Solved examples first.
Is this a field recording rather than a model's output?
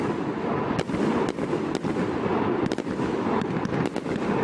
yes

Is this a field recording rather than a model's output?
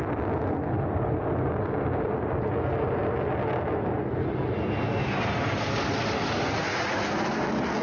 yes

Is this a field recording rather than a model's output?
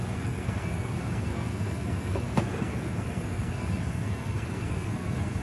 no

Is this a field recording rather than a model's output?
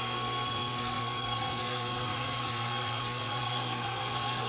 no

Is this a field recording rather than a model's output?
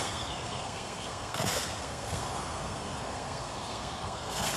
no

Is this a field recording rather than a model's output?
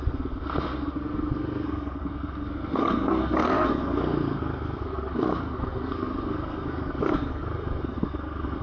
no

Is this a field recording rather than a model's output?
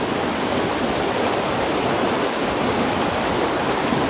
yes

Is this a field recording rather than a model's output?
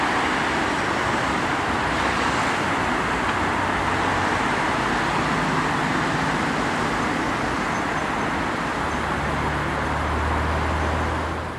yes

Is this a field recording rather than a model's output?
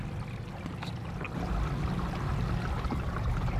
yes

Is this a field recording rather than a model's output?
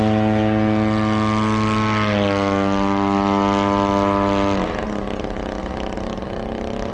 yes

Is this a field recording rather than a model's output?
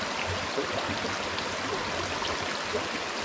yes